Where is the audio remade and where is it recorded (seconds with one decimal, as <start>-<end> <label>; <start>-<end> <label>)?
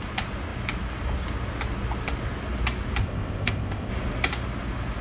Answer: 0.0-3.0 recorded; 3.0-3.9 remade; 3.9-5.0 recorded